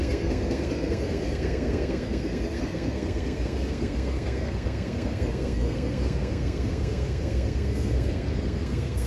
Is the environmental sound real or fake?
fake